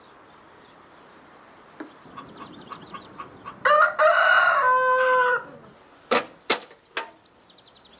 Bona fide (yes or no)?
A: yes